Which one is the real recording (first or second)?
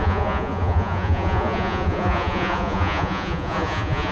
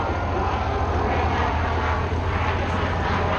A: second